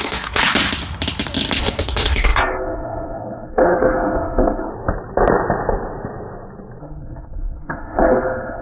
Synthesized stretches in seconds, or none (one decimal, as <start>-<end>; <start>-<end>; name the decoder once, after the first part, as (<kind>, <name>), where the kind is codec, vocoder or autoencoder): 0.0-0.4 (codec, SNAC); 1.6-4.7; 6.8-8.6